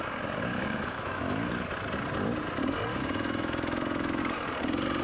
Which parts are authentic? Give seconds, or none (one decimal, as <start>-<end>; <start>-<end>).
0.0-0.5; 1.5-2.9; 4.2-5.0